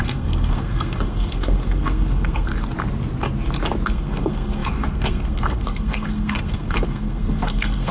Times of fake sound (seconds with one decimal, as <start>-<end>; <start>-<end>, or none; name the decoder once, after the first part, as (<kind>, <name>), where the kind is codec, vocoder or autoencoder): 0.0-2.5 (codec, SNAC); 3.9-7.9

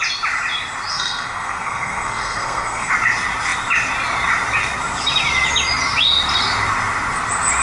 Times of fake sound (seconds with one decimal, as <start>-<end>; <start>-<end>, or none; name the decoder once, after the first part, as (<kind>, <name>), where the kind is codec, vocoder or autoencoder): 0.9-2.9 (codec, SNAC)

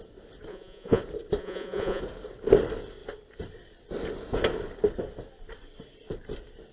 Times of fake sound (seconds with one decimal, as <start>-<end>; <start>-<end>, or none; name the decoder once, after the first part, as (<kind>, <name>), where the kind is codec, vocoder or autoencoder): 0.5-1.0 (vocoder, Vocos); 1.4-2.0

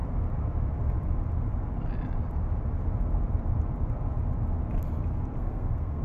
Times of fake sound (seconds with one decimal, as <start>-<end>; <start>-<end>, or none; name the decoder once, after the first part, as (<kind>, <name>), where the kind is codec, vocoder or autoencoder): 5.4-6.0 (codec, SNAC)

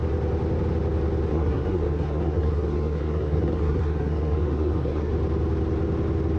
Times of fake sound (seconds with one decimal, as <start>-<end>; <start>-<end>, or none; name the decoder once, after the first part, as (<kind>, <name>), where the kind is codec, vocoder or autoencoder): 1.3-5.1 (codec, SNAC)

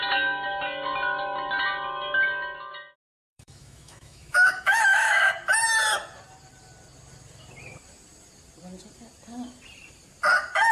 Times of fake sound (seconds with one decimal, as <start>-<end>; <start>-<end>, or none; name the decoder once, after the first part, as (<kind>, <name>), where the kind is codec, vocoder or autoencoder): 3.1-5.3 (autoencoder, DAC-VAE)

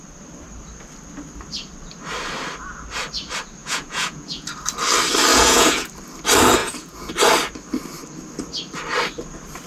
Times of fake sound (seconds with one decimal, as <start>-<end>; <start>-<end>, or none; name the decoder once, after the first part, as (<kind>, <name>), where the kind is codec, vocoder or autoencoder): 3.6-4.5 (vocoder, Vocos); 5.3-5.9; 6.6-7.1

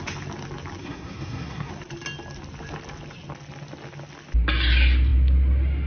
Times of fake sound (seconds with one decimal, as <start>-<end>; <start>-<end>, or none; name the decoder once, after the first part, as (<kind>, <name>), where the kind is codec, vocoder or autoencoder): 0.8-1.7 (codec, SNAC)